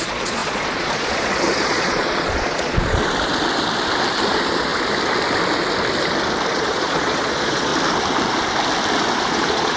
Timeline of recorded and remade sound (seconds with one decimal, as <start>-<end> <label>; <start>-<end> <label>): 0.0-3.0 remade; 3.0-4.3 recorded; 4.3-4.7 remade; 4.7-6.5 recorded; 6.5-7.7 remade; 7.7-9.3 recorded; 9.3-9.8 remade